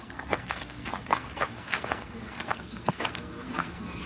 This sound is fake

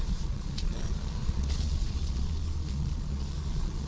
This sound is fake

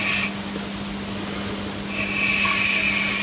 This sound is real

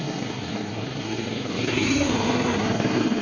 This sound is fake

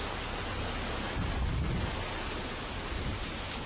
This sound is real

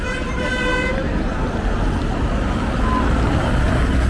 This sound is real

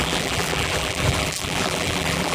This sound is fake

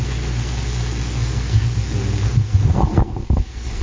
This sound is fake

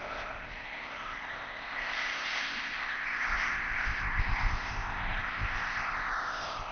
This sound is fake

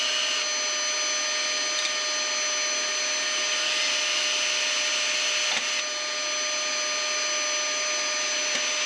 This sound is real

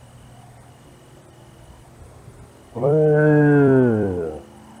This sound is fake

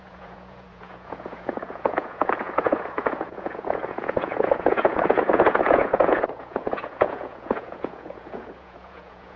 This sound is fake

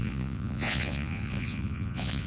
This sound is fake